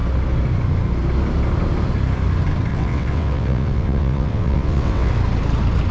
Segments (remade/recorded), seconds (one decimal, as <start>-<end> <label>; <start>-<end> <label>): 0.0-2.7 recorded; 2.7-5.1 remade; 5.1-5.9 recorded